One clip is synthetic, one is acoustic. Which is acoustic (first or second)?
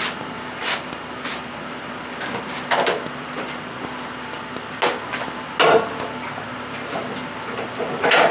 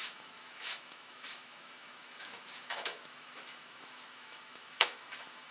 first